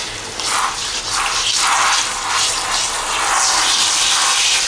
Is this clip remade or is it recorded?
recorded